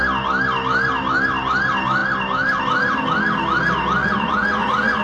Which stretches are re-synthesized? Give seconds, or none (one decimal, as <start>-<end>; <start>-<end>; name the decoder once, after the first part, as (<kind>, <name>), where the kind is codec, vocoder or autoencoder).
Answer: 4.0-5.0 (vocoder, Vocos)